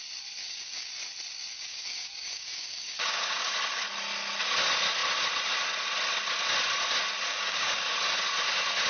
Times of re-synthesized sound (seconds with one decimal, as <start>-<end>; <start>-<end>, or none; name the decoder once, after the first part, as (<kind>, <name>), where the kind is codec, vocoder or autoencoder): 0.4-0.9 (codec, DAC); 1.5-3.5; 7.3-7.9

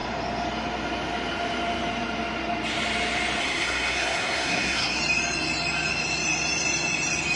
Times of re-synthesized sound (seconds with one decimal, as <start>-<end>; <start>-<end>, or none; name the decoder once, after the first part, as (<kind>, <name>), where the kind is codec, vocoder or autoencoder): 3.4-5.0 (codec, SNAC)

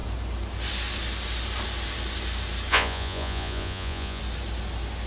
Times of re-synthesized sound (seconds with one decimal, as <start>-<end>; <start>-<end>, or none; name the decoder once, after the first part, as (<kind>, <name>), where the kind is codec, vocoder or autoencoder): 2.7-4.2 (vocoder, Vocos)

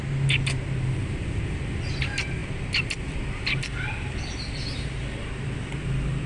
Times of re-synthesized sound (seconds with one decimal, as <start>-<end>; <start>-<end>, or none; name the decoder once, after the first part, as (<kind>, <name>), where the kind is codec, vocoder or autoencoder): 2.4-6.3 (vocoder, BigVGAN v2)

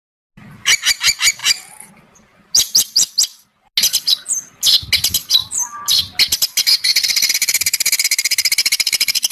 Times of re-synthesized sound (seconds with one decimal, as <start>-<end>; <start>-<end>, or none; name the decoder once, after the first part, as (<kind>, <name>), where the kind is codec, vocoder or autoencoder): 5.4-6.0 (vocoder, BigVGAN v2)

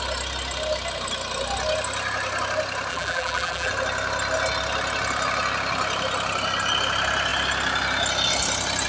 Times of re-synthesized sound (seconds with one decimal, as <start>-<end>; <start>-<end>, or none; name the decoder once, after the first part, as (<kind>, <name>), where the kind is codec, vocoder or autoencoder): 2.9-3.7 (vocoder, BigVGAN v2)

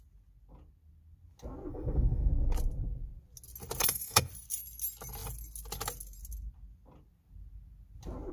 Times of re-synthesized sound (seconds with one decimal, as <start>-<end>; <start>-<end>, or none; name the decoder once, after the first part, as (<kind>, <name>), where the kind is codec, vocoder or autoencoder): 1.7-2.3 (codec, SNAC); 3.8-4.3